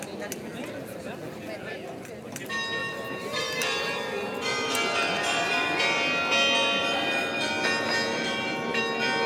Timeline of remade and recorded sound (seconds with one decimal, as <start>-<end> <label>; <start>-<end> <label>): 0.0-2.8 recorded; 2.8-5.8 remade; 5.8-6.8 recorded; 6.8-7.5 remade; 7.5-8.1 recorded; 8.1-8.8 remade; 8.8-9.3 recorded